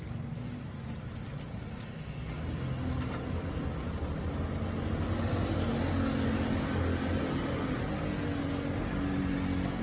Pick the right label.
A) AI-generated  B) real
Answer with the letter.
B